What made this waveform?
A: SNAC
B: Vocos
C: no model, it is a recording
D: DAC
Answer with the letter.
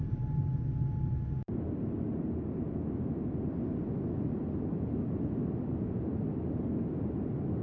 C